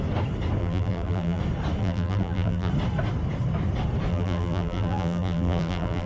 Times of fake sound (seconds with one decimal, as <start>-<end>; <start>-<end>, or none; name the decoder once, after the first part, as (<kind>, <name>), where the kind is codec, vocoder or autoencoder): 0.6-1.4 (vocoder, BigVGAN v2); 1.8-2.7; 4.1-6.1